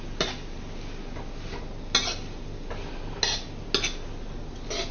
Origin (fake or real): real